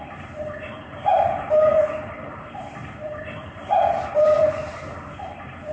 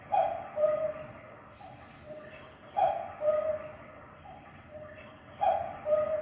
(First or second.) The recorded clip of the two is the second